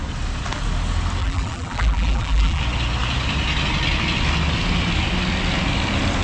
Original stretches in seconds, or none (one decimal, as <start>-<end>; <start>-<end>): 0.0-1.2; 2.6-6.2